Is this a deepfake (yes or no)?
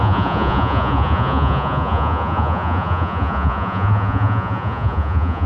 yes